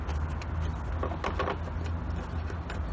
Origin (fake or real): real